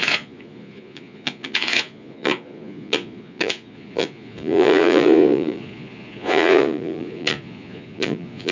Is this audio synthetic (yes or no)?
yes